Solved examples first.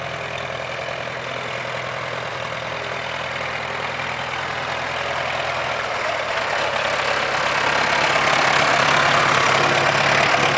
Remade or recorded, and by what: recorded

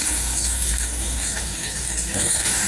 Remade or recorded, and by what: remade, codec, DAC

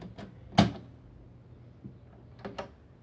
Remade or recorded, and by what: recorded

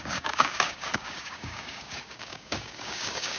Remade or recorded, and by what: remade, codec, DAC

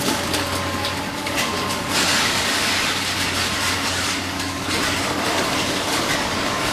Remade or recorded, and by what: remade, codec, DAC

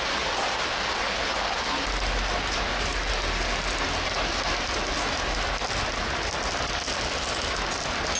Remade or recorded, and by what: recorded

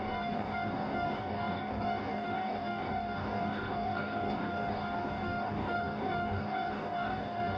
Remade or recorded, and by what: remade, codec, DAC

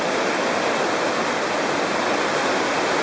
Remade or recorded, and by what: recorded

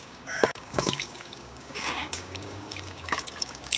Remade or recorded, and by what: remade, codec, DAC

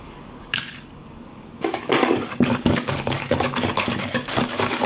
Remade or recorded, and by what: remade, codec, DAC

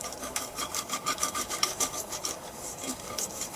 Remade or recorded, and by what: remade, codec, DAC